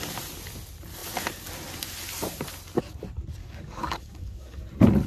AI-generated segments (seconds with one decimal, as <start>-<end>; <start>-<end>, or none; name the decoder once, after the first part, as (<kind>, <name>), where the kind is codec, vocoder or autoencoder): 3.4-4.6 (codec, DAC)

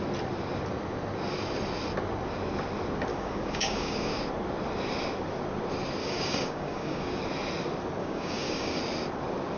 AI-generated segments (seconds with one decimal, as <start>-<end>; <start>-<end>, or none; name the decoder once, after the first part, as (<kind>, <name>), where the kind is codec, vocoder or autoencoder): 3.1-4.2 (codec, DAC); 6.0-7.2; 8.0-8.8

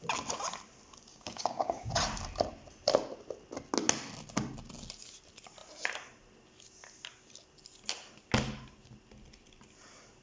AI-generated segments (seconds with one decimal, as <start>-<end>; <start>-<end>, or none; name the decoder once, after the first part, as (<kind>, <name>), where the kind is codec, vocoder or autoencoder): 1.1-1.9 (codec, DAC)

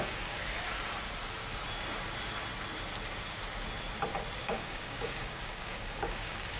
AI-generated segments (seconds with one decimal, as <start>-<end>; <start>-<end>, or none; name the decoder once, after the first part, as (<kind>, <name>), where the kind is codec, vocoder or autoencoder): 0.0-0.4 (codec, DAC); 4.4-6.6

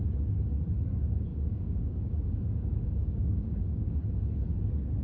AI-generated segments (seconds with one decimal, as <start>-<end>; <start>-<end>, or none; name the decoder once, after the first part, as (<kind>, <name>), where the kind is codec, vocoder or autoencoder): 1.3-4.0 (codec, DAC)

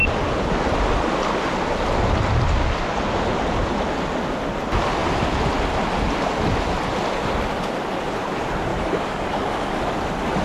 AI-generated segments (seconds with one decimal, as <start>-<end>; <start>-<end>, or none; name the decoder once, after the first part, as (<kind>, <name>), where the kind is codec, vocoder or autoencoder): 8.7-9.9 (codec, DAC)

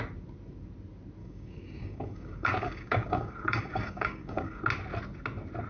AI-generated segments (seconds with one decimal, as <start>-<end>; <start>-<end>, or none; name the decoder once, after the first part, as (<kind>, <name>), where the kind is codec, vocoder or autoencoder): 1.2-4.6 (codec, DAC)

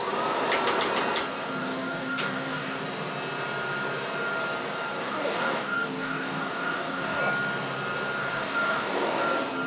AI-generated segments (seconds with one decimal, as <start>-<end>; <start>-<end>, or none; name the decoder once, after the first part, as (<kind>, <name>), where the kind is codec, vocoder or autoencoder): 1.6-2.8 (codec, DAC); 5.0-7.2; 8.2-9.2